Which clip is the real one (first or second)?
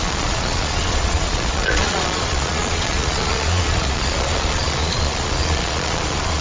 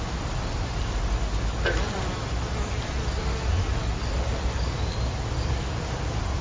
second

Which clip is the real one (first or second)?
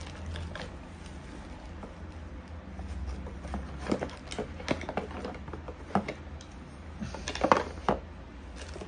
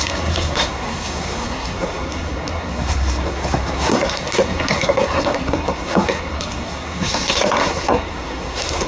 first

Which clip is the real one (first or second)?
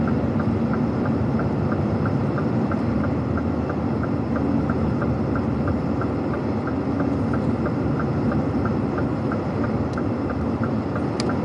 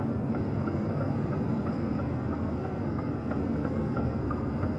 first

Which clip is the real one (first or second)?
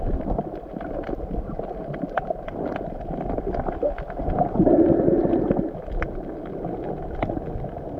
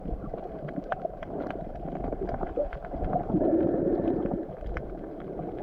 first